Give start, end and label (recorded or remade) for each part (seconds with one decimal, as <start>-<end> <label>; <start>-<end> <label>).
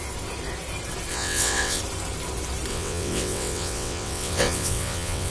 0.0-1.1 recorded; 1.1-1.8 remade; 1.8-2.7 recorded; 2.7-5.3 remade